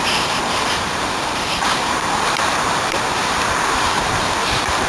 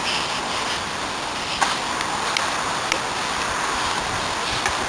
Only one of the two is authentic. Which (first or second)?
second